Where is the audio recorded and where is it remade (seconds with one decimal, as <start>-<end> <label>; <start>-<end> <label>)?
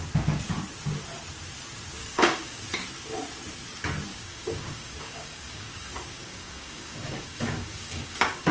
0.0-2.0 recorded; 2.0-2.6 remade; 2.6-4.1 recorded; 4.1-8.5 remade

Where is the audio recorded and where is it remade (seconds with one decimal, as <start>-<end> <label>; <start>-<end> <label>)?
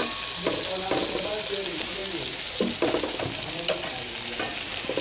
0.0-5.0 recorded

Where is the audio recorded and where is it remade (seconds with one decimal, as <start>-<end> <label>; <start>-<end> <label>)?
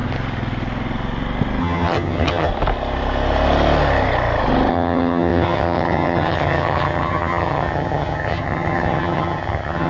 0.0-1.6 recorded; 1.6-2.5 remade; 2.5-4.7 recorded; 4.7-9.9 remade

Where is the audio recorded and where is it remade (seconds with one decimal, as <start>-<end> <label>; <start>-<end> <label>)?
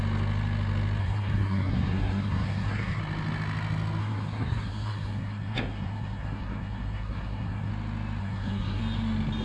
0.0-1.0 recorded; 1.0-3.0 remade; 3.0-4.0 recorded; 4.0-7.7 remade; 7.7-8.2 recorded; 8.2-8.8 remade; 8.8-9.4 recorded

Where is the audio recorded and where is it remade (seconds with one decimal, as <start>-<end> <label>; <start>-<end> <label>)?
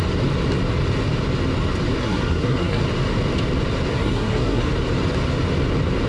0.0-2.0 recorded; 2.0-2.8 remade; 2.8-3.9 recorded; 3.9-4.7 remade; 4.7-6.1 recorded